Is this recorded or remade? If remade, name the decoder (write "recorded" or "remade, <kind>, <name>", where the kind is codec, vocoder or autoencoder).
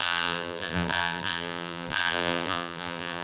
remade, vocoder, BigVGAN v2